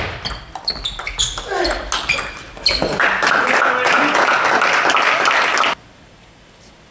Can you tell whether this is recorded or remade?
recorded